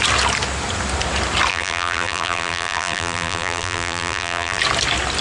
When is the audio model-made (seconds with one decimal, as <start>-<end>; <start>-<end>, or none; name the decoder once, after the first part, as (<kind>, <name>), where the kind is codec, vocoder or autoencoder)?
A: 1.5-4.6 (vocoder, BigVGAN v2)